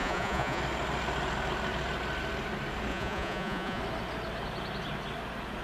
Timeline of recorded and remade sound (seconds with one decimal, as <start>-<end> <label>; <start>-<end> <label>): 0.0-0.6 remade; 0.6-2.9 recorded; 2.9-3.8 remade; 3.8-5.6 recorded